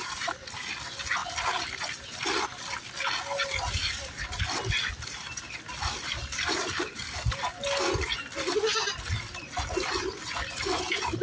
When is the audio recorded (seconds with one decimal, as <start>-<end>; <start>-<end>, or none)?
0.0-11.2